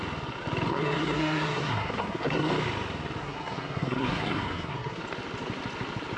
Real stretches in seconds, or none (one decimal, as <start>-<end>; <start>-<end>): 0.0-0.7; 2.5-3.2; 5.0-6.2